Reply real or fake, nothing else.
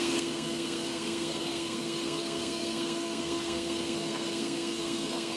fake